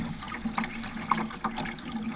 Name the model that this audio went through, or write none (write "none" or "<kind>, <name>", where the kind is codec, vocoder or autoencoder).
none